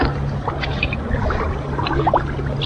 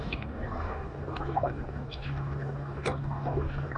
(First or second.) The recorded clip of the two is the first